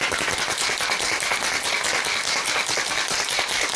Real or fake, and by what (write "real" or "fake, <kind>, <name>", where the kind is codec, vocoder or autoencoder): real